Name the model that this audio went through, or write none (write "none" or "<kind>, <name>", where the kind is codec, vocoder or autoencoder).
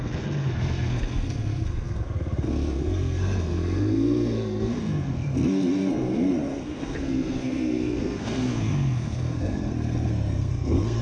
codec, SNAC